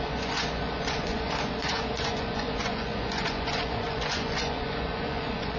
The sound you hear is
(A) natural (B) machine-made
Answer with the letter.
B